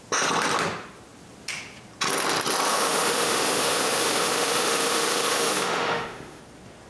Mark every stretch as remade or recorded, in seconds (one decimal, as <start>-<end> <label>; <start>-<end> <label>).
0.0-2.7 recorded; 2.7-6.4 remade; 6.4-6.9 recorded

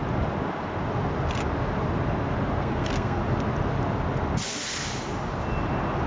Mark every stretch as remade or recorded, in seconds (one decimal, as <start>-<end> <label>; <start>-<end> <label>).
0.0-2.6 recorded; 2.6-3.2 remade; 3.2-6.1 recorded

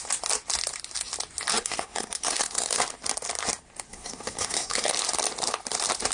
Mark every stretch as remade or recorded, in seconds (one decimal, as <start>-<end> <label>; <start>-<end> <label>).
0.0-1.5 recorded; 1.5-2.8 remade; 2.8-3.9 recorded; 3.9-4.9 remade; 4.9-6.1 recorded